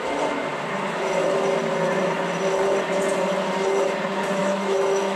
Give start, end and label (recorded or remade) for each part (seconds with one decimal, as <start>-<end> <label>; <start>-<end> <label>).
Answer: 0.0-4.4 recorded; 4.4-5.2 remade